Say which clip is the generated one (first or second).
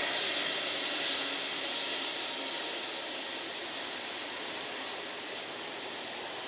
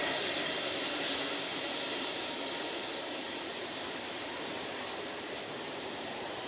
second